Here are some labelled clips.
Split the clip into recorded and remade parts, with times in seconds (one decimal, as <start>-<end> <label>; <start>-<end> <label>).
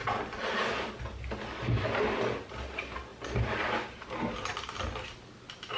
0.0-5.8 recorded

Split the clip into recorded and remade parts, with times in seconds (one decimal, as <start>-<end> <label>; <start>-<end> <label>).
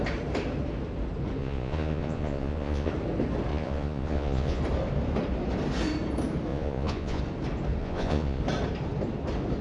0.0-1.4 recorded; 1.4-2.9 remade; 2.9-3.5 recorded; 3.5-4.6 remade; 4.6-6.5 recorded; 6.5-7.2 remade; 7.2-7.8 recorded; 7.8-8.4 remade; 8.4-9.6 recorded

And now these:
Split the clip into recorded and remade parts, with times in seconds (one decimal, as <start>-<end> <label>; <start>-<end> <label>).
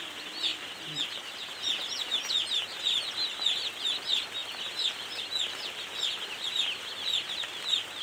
0.0-8.0 recorded